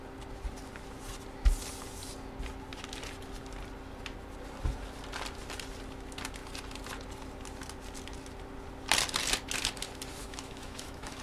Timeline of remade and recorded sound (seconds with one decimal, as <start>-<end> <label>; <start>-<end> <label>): 0.0-10.2 recorded; 10.2-11.2 remade